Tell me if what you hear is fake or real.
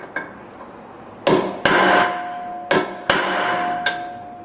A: real